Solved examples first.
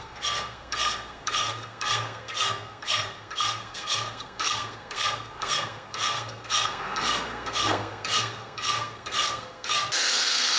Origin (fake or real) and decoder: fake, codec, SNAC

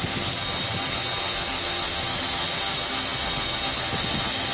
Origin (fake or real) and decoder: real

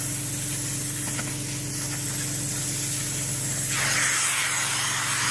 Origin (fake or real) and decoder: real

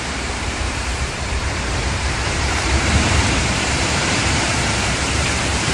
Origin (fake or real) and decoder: fake, vocoder, BigVGAN v2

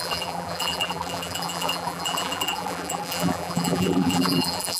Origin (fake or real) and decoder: fake, vocoder, BigVGAN v2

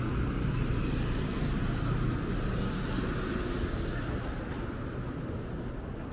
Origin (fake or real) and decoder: real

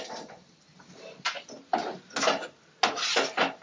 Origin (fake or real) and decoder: real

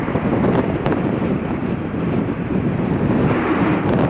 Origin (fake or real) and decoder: fake, vocoder, BigVGAN v2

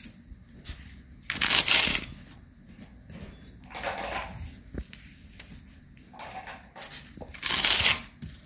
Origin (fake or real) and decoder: real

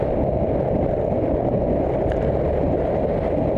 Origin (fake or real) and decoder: real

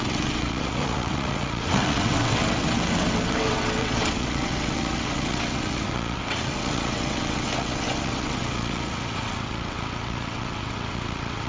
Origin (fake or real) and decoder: fake, vocoder, WaveNeXt